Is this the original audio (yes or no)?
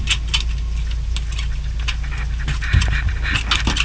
yes